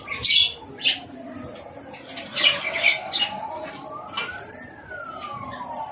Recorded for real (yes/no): yes